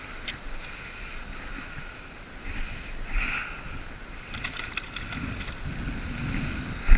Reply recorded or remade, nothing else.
recorded